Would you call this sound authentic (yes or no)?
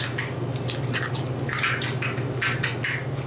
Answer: yes